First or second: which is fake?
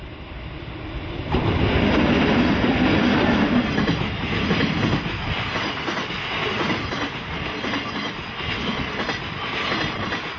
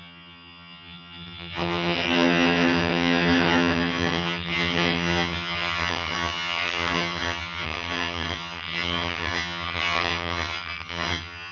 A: second